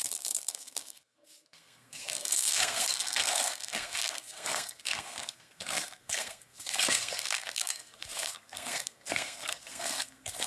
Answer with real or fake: fake